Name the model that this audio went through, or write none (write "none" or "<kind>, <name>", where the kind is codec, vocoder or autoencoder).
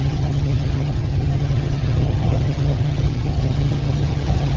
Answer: vocoder, HiFi-GAN